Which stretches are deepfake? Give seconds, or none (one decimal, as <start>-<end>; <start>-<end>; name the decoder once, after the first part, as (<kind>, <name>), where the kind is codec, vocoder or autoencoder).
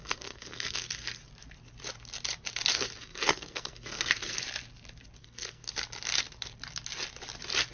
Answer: 0.0-1.2 (codec, SNAC); 2.7-4.4; 5.2-5.7